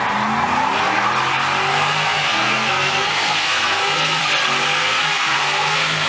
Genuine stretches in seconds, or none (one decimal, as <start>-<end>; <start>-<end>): 0.0-1.7; 4.2-4.8